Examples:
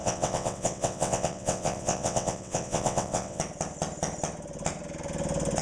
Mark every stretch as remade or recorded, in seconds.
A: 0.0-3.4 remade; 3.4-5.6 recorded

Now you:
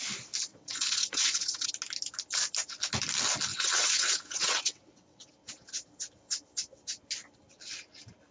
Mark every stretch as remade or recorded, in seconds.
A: 0.0-0.5 recorded; 0.5-1.7 remade; 1.7-3.5 recorded; 3.5-5.3 remade; 5.3-8.3 recorded

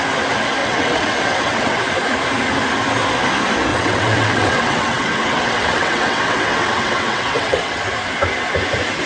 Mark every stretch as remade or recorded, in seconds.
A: 0.0-0.6 recorded; 0.6-1.8 remade; 1.8-3.7 recorded; 3.7-7.8 remade; 7.8-9.1 recorded